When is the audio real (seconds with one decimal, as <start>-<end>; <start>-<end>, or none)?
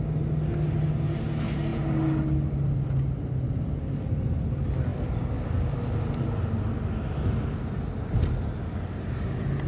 0.0-9.7